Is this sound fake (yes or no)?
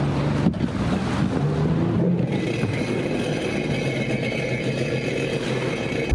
no